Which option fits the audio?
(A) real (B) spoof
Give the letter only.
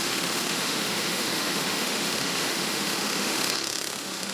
B